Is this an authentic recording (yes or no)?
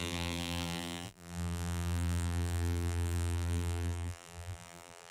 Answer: no